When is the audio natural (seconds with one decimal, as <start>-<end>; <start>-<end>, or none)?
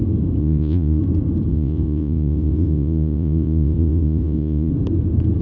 0.0-0.4; 1.0-1.5; 4.7-5.4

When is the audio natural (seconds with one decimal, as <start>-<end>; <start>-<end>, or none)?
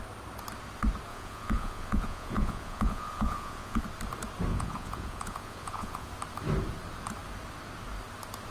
0.0-1.1; 3.8-4.5; 6.1-8.5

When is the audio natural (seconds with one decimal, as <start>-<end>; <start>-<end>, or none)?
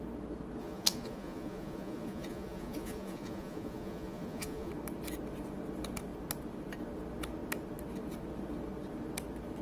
0.0-0.6; 4.7-9.6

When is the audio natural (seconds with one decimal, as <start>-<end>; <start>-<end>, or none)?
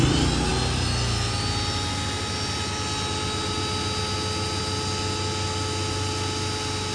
0.0-6.9